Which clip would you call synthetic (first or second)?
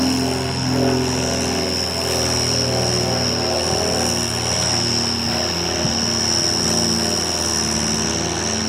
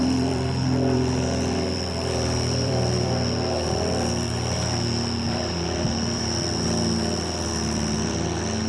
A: second